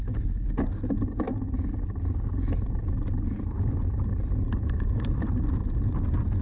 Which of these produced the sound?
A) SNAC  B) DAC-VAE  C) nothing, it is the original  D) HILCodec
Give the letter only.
C